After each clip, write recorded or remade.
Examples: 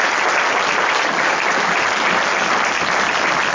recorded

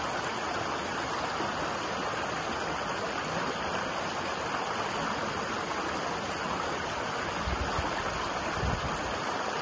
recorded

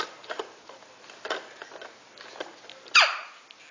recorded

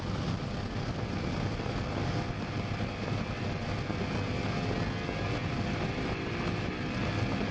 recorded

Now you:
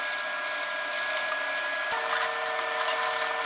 recorded